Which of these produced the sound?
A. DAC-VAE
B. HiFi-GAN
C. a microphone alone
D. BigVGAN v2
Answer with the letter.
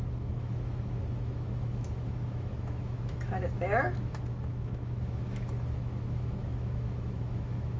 A